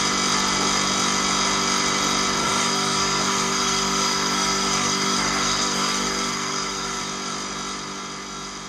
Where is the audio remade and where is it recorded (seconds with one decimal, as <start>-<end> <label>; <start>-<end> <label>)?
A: 0.0-2.4 recorded; 2.4-7.0 remade; 7.0-8.7 recorded